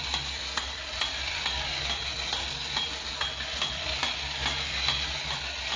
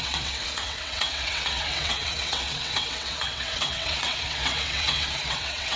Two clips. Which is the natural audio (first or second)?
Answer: first